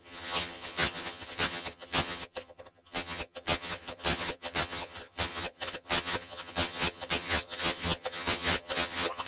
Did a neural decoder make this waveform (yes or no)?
yes